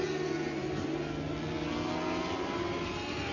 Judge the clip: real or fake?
real